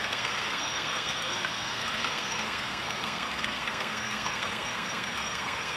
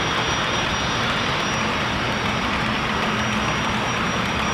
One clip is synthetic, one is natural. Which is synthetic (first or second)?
first